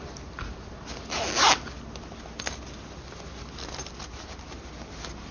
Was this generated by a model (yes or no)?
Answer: no